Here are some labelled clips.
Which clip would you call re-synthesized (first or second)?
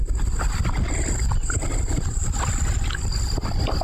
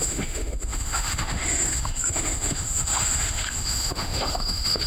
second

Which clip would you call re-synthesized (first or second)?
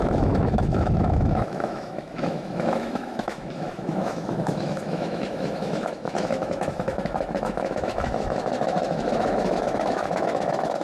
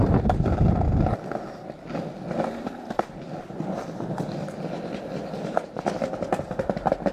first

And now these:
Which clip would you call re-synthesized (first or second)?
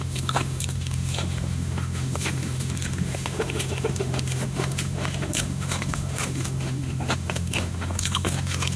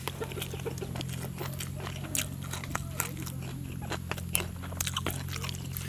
first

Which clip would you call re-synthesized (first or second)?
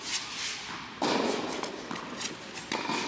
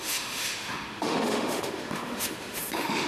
second